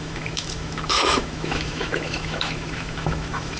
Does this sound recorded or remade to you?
remade